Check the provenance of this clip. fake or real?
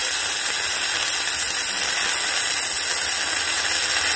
real